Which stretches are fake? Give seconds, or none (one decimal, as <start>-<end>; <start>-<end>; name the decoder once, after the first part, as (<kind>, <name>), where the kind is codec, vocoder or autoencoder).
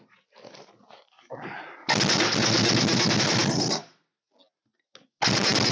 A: none